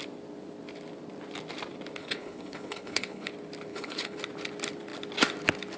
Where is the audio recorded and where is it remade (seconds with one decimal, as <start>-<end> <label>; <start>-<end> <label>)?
0.0-2.0 recorded; 2.0-3.3 remade; 3.3-3.7 recorded; 3.7-4.2 remade; 4.2-5.8 recorded